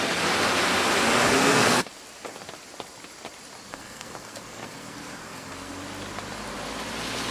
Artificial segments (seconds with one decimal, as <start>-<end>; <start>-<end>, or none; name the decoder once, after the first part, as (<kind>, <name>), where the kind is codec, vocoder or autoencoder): 1.3-1.9 (codec, SNAC); 3.7-5.7